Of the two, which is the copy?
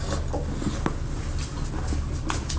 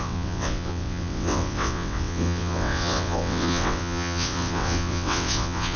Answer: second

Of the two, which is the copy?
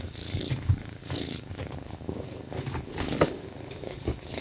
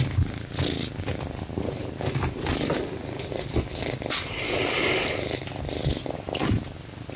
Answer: first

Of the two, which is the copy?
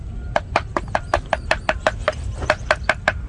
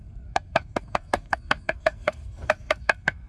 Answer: second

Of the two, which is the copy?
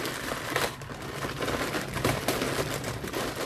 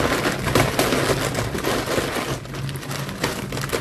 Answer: first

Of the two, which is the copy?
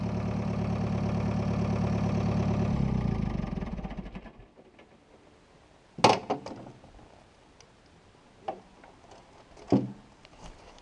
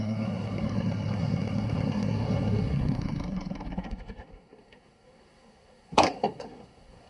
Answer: second